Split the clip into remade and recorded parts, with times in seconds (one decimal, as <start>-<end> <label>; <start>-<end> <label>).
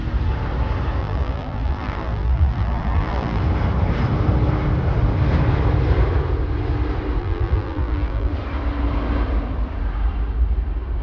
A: 0.0-1.0 recorded; 1.0-3.4 remade; 3.4-7.2 recorded; 7.2-8.3 remade; 8.3-11.0 recorded